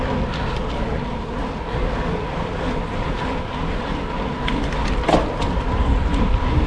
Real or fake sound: real